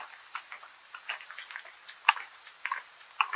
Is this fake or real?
real